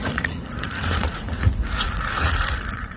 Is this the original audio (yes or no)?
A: no